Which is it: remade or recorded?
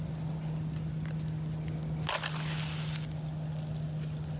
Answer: recorded